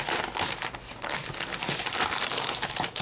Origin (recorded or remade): recorded